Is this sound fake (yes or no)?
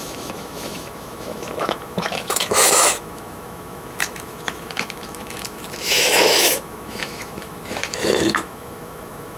yes